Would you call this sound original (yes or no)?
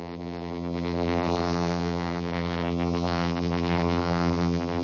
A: no